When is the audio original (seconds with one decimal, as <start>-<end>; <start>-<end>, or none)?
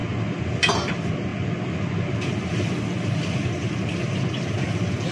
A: 0.0-5.1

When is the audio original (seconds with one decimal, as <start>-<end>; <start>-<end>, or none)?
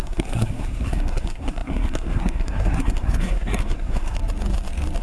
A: 4.2-5.0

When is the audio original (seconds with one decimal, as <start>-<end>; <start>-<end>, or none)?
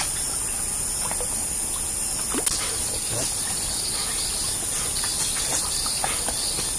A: 0.0-6.8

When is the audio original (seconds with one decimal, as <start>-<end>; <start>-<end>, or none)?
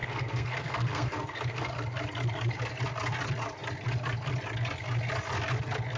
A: 1.7-6.0